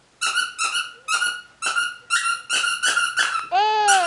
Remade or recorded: recorded